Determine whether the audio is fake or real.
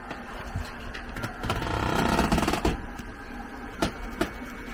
real